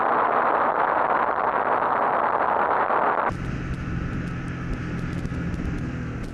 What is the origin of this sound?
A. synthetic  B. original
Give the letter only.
B